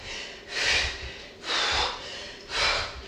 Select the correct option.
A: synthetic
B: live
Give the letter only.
B